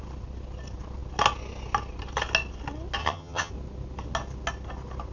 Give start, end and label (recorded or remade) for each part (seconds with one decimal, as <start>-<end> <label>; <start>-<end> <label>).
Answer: 0.0-3.0 recorded; 3.0-3.5 remade; 3.5-5.1 recorded